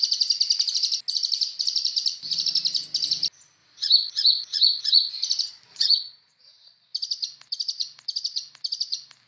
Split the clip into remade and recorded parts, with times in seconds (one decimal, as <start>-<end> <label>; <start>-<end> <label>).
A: 0.0-3.6 recorded; 3.6-5.1 remade; 5.1-5.7 recorded; 5.7-6.5 remade; 6.5-9.3 recorded